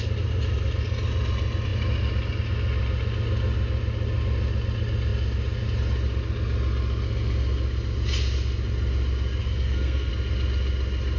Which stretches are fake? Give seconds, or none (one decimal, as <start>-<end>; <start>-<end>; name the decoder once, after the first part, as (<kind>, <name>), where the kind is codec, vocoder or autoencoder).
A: 9.4-10.1 (codec, SNAC)